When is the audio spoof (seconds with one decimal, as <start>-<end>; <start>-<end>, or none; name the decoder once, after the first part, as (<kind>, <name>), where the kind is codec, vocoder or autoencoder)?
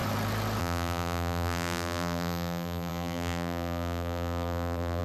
0.6-5.0 (vocoder, BigVGAN v2)